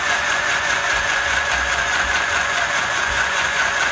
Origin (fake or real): fake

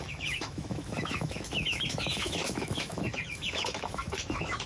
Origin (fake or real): fake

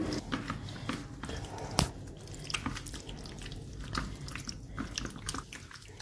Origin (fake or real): real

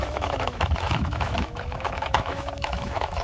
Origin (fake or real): fake